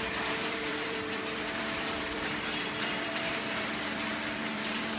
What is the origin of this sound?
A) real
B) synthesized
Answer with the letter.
B